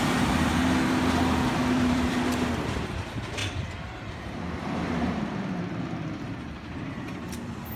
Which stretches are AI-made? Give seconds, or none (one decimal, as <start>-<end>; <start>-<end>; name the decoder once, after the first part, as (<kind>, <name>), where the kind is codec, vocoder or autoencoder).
0.0-0.6 (vocoder, BigVGAN v2); 1.1-7.8